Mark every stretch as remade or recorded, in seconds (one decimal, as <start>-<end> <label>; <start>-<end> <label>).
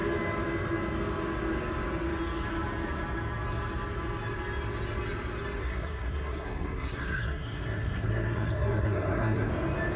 0.0-5.6 recorded; 5.6-9.5 remade; 9.5-10.0 recorded